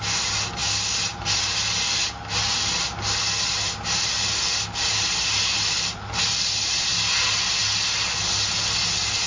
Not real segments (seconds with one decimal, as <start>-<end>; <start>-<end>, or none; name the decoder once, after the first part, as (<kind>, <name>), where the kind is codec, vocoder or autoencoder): none